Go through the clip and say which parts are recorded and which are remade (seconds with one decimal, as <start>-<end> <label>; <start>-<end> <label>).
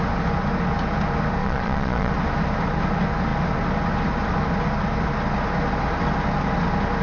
0.0-1.4 recorded; 1.4-2.1 remade; 2.1-7.0 recorded